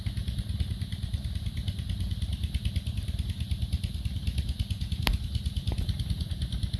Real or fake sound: real